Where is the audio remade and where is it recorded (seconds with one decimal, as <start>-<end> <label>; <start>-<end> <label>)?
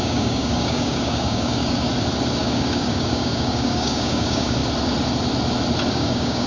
0.0-1.9 remade; 1.9-2.4 recorded; 2.4-4.6 remade; 4.6-5.9 recorded; 5.9-6.5 remade